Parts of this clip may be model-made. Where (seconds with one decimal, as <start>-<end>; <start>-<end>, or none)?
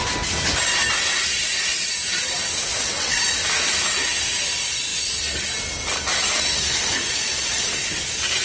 2.7-3.2